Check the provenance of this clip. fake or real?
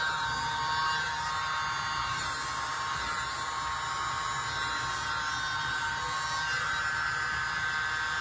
real